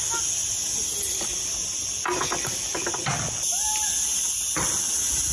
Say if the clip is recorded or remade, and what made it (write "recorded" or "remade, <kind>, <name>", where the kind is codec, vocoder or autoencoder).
recorded